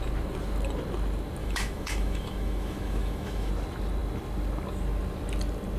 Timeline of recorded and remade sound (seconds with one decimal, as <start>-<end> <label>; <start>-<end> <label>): 0.0-1.4 recorded; 1.4-3.5 remade; 3.5-5.8 recorded